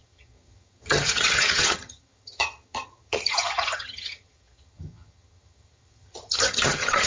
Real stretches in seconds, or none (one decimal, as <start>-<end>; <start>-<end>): none